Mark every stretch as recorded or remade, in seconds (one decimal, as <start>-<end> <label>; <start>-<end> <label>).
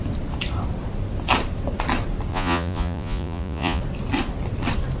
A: 0.0-2.3 recorded; 2.3-3.8 remade; 3.8-5.0 recorded